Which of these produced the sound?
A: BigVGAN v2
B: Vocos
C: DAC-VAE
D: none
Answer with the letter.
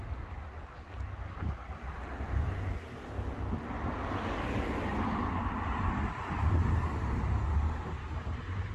D